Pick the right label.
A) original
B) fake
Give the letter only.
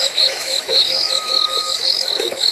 B